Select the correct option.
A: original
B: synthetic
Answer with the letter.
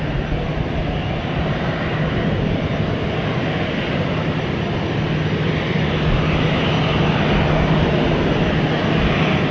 A